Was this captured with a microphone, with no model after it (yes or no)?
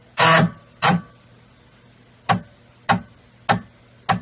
yes